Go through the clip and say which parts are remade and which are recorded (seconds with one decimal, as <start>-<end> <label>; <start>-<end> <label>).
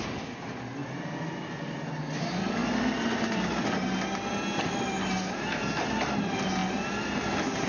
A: 0.0-7.7 recorded